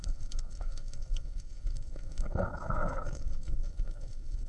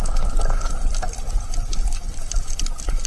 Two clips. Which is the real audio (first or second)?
second